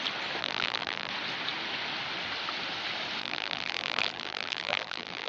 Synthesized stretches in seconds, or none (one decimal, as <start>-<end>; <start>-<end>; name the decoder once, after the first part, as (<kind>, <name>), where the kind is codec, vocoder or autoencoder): 0.4-1.1 (vocoder, BigVGAN v2); 3.2-5.3